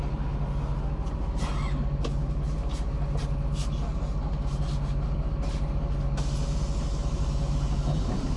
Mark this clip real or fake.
real